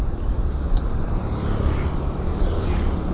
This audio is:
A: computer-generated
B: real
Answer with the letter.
B